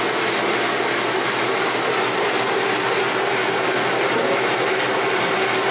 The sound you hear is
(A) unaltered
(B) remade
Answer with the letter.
A